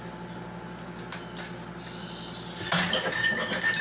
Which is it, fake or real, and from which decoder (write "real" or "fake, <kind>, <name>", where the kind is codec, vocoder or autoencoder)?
real